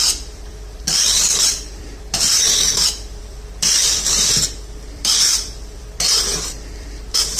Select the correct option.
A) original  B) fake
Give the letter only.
B